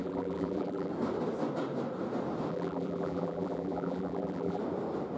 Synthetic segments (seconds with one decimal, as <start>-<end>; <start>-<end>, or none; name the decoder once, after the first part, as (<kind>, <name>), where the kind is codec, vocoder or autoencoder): 0.0-0.9 (vocoder, BigVGAN v2); 2.5-4.6